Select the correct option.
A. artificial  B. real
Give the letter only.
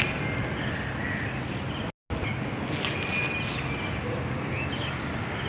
B